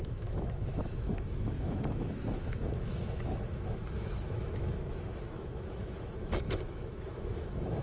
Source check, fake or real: fake